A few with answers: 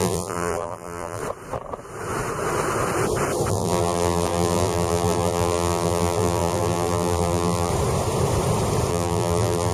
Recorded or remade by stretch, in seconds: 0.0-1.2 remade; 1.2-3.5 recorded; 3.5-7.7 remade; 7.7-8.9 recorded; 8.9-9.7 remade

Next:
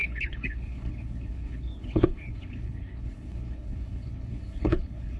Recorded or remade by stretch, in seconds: 0.0-5.2 remade

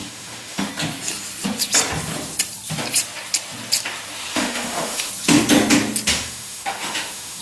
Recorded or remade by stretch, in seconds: 0.0-0.7 remade; 0.7-4.3 recorded; 4.3-5.1 remade; 5.1-6.1 recorded; 6.1-7.4 remade

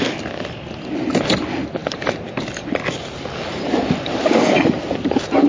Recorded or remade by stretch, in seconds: 0.0-5.5 recorded